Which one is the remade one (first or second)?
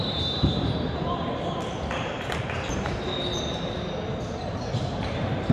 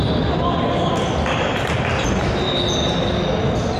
first